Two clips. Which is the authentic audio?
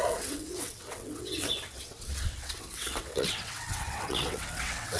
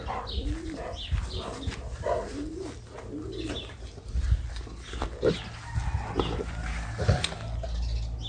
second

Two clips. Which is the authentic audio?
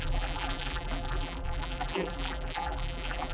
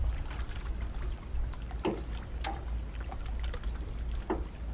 second